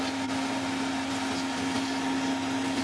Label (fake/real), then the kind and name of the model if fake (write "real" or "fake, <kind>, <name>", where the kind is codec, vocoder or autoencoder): real